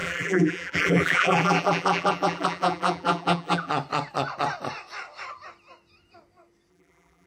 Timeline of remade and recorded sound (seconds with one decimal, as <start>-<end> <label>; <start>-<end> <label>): 0.0-3.7 remade; 3.7-6.7 recorded; 6.7-7.3 remade